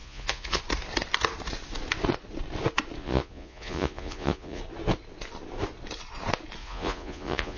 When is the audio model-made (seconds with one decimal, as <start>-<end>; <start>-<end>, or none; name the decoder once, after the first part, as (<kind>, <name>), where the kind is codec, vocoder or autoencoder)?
0.0-0.6 (vocoder, Vocos); 3.0-4.6; 6.6-7.6

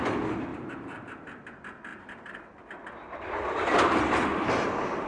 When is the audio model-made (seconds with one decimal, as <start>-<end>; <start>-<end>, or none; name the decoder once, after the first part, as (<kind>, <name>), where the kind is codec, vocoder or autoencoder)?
0.5-1.4 (vocoder, BigVGAN v2); 1.9-2.7; 4.3-5.1